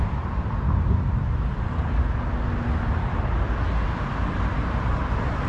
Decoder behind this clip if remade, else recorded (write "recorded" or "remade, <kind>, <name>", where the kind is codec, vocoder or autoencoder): recorded